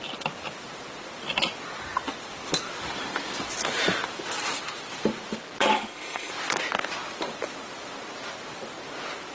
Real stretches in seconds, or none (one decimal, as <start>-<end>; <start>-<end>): 0.0-5.7; 6.3-9.3